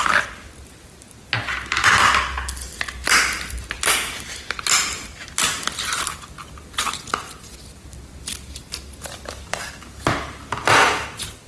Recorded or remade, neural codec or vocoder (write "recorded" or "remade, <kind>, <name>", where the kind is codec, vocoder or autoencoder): recorded